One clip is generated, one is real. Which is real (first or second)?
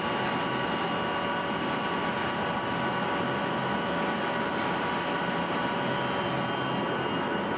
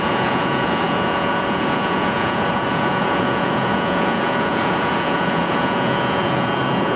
first